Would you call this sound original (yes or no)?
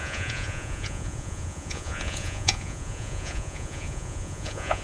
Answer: no